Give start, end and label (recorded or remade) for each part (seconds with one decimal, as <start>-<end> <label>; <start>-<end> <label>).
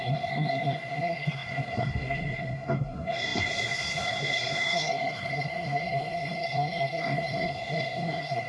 0.0-8.5 remade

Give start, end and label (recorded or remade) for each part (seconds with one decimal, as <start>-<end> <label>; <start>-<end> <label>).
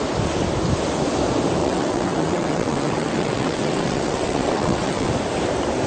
0.0-1.6 recorded; 1.6-5.1 remade; 5.1-5.9 recorded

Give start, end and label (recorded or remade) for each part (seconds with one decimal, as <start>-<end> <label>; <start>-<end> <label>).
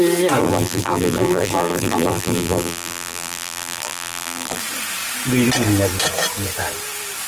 0.0-0.4 recorded; 0.4-4.6 remade; 4.6-7.3 recorded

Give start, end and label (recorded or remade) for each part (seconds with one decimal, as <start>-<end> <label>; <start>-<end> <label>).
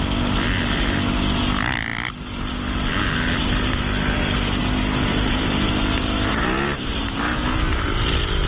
0.0-5.1 recorded; 5.1-5.7 remade; 5.7-6.3 recorded; 6.3-7.5 remade; 7.5-8.5 recorded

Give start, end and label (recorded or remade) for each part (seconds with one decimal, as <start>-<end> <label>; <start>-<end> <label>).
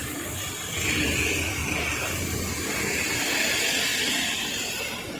0.0-1.6 recorded; 1.6-2.5 remade; 2.5-5.2 recorded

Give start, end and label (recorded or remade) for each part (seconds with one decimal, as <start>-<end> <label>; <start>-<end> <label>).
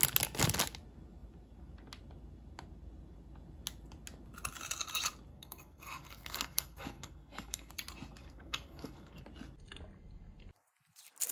0.0-5.3 recorded; 5.3-7.7 remade; 7.7-8.2 recorded; 8.2-9.2 remade; 9.2-11.3 recorded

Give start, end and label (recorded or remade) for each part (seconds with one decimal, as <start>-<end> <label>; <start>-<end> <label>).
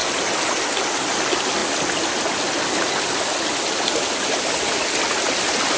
0.0-5.8 recorded